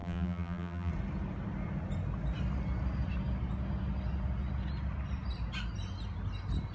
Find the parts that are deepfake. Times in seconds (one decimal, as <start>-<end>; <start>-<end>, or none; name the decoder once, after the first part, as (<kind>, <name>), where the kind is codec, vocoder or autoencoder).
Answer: 0.0-0.9 (vocoder, BigVGAN v2)